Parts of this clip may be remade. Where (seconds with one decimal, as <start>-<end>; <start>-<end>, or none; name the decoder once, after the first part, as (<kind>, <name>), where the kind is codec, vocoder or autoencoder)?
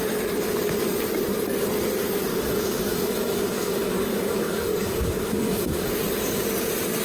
2.3-5.9 (codec, DAC)